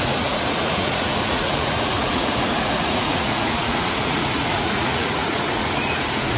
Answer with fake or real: fake